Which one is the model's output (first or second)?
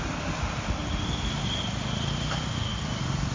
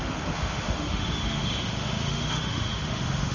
second